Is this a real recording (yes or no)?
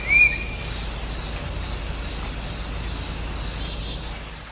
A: yes